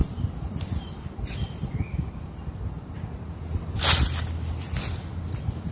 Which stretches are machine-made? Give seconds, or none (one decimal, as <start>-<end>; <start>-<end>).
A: none